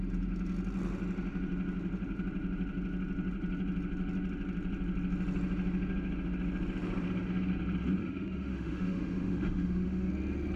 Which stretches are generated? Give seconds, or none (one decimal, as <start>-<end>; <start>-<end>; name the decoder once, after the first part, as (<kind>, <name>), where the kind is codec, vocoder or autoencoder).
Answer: 8.0-10.1 (autoencoder, DAC-VAE)